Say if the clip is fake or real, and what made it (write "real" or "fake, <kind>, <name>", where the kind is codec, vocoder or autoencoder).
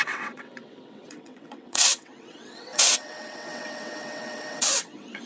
fake, vocoder, WaveNeXt